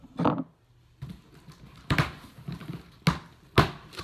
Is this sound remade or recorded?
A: recorded